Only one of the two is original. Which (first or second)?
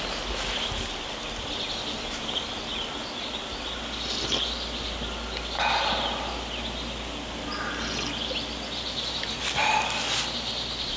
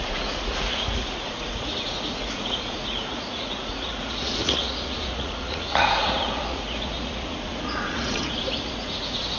first